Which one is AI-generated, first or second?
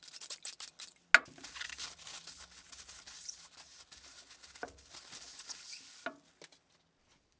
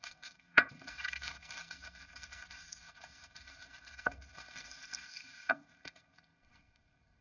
second